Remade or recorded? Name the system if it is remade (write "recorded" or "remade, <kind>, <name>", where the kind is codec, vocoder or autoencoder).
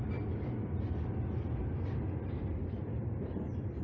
recorded